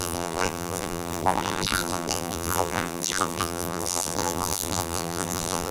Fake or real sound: fake